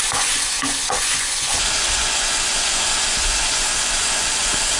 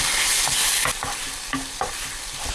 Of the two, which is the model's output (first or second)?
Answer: first